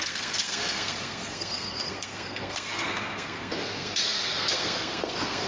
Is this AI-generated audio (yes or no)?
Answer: yes